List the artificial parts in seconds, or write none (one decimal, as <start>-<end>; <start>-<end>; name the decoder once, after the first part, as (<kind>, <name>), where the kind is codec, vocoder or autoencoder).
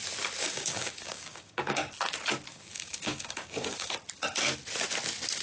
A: 0.4-1.9 (codec, DAC); 2.5-3.9